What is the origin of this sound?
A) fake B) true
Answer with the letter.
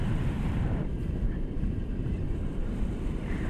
A